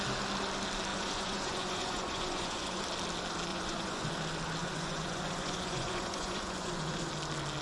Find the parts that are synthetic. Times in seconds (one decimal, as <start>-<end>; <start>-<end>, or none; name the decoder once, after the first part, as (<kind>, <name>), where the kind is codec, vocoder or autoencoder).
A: 0.9-2.8 (vocoder, Vocos); 3.5-4.1; 4.6-7.1